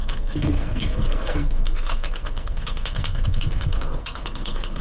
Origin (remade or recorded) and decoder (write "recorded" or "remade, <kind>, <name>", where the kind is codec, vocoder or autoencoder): remade, codec, SNAC